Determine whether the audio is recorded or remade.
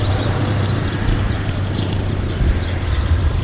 remade